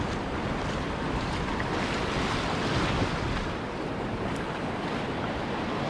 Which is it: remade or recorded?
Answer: recorded